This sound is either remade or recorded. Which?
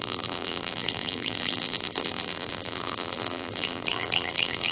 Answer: remade